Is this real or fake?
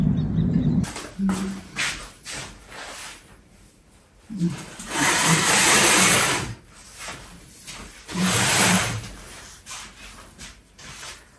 fake